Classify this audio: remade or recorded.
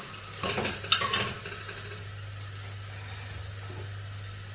recorded